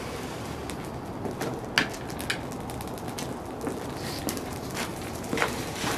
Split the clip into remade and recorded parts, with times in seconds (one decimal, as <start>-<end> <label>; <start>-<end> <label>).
0.0-0.6 remade; 0.6-4.2 recorded; 4.2-6.0 remade